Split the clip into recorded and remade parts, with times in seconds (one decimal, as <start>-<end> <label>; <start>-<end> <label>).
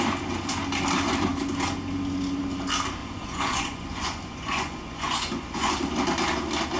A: 0.0-3.0 recorded; 3.0-5.7 remade; 5.7-6.8 recorded